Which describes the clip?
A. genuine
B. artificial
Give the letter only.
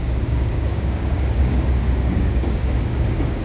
B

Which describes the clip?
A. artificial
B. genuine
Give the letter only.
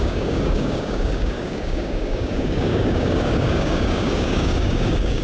A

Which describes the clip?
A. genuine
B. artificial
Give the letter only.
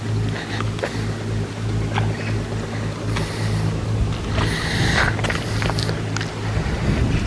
A